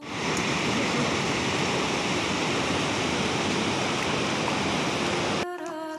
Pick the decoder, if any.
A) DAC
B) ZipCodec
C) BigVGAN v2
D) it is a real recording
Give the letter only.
D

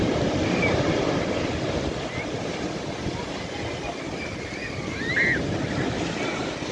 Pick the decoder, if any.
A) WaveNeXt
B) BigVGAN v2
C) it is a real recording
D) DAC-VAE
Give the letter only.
C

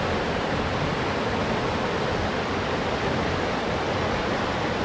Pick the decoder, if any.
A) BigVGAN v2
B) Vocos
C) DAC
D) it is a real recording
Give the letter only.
D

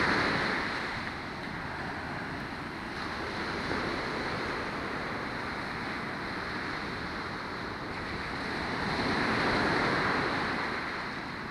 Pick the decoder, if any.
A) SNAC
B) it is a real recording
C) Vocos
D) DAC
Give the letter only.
B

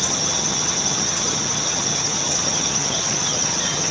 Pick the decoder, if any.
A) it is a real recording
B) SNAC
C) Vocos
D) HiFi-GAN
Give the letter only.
D